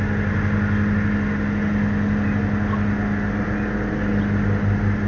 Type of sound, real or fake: real